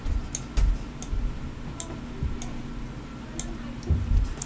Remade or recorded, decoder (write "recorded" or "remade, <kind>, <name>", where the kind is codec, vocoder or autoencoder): recorded